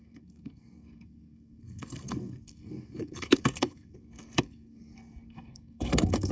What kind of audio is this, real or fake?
fake